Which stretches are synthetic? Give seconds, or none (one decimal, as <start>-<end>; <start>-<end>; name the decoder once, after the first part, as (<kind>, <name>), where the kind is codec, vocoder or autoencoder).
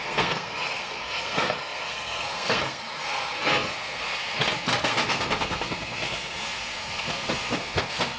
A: 0.0-8.2 (codec, SNAC)